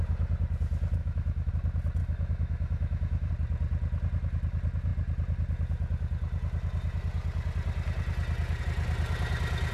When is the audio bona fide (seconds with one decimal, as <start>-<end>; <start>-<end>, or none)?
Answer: 0.0-1.0; 1.5-2.0; 3.3-9.7